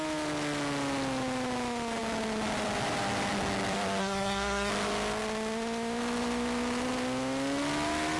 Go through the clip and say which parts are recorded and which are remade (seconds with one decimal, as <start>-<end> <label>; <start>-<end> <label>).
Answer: 0.0-4.0 recorded; 4.0-4.7 remade; 4.7-8.2 recorded